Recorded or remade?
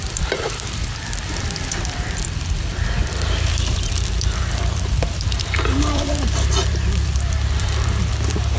remade